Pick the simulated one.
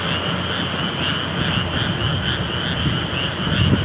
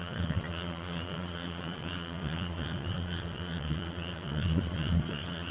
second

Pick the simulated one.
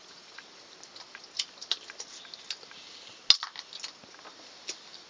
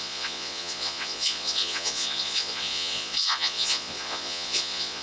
second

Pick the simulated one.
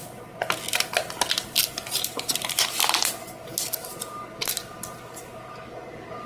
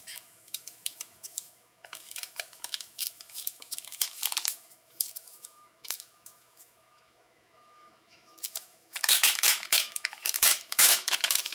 second